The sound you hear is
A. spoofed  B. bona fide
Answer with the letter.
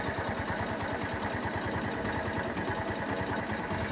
B